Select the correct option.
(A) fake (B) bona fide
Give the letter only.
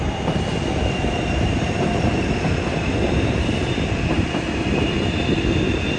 A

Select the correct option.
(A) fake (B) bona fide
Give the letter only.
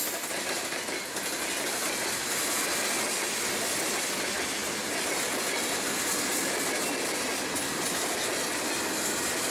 B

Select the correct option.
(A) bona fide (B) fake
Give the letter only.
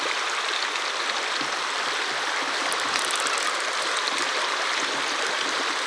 A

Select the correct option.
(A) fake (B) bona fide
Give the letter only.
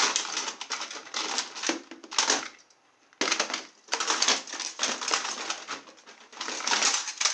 B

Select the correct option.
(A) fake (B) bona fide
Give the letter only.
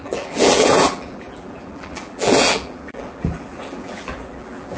A